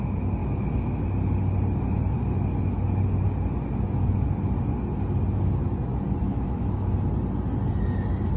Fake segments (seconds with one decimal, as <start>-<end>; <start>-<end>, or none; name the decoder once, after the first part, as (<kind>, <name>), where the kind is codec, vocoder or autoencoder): 0.4-1.1 (autoencoder, DAC-VAE); 6.3-6.9